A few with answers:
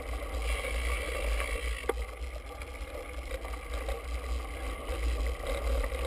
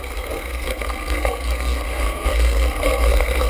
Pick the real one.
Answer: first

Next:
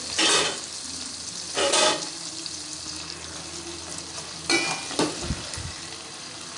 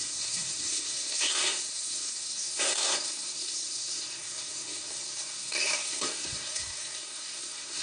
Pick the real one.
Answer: first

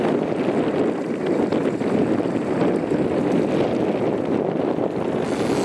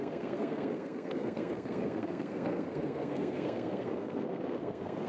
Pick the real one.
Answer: first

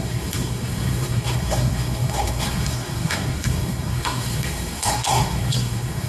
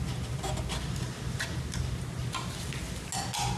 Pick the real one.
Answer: second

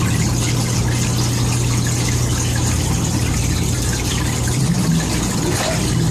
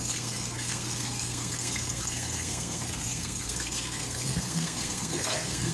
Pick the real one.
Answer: first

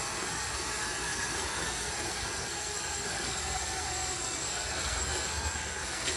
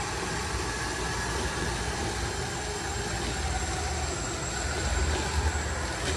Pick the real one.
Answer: second